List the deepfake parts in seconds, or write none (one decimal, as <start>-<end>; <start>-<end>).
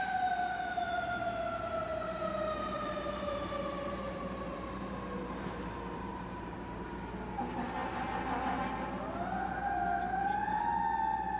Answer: 1.9-6.9